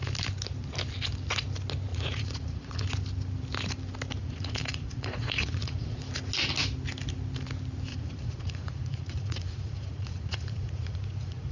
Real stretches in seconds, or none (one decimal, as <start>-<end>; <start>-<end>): 0.0-1.9; 2.8-4.2; 6.0-7.9